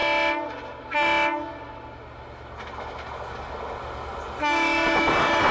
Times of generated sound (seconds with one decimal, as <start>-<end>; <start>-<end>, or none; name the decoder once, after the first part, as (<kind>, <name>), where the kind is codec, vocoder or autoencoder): none